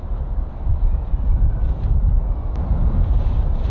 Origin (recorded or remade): remade